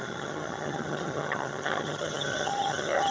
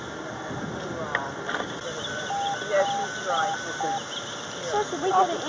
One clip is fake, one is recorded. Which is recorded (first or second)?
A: second